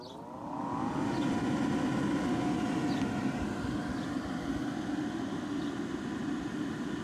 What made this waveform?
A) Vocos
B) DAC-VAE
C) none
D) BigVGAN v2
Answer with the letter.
C